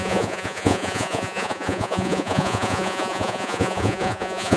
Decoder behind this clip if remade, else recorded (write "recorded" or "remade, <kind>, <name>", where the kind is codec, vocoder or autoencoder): remade, vocoder, Vocos